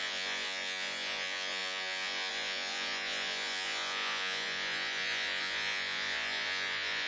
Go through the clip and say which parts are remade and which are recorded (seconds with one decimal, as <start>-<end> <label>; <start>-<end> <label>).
0.0-7.1 remade